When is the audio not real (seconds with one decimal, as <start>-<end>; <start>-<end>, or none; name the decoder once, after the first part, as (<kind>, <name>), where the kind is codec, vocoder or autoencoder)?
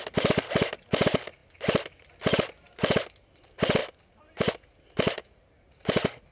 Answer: none